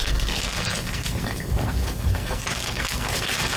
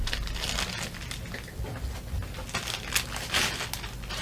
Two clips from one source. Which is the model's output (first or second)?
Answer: first